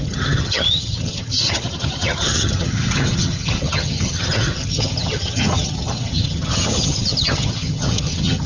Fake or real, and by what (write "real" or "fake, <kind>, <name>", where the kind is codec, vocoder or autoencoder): fake, vocoder, HiFi-GAN